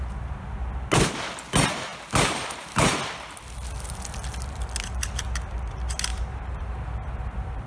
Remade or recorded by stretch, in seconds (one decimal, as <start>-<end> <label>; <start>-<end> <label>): 0.0-1.9 recorded; 1.9-3.0 remade; 3.0-6.1 recorded; 6.1-7.7 remade